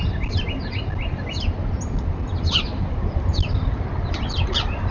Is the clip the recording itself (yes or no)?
yes